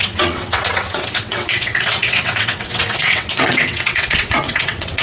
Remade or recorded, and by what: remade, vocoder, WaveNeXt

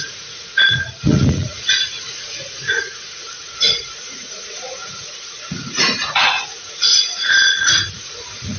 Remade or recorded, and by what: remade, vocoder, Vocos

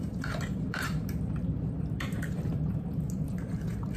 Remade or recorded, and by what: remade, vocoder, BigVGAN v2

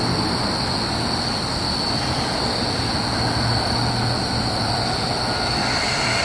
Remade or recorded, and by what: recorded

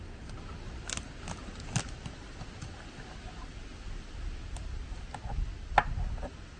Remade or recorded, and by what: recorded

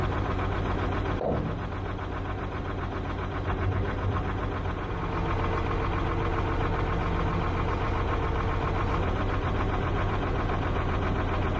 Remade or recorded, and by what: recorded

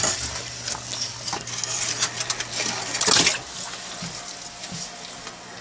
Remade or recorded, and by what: recorded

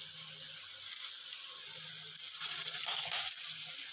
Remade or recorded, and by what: recorded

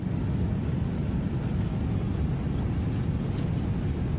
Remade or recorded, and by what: recorded